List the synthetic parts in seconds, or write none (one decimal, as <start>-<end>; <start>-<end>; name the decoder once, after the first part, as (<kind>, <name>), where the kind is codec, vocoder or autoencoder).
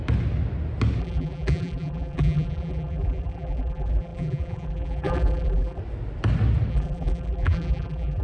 1.0-5.8 (vocoder, BigVGAN v2); 6.7-8.2